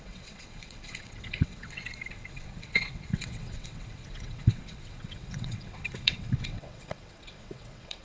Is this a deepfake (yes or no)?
yes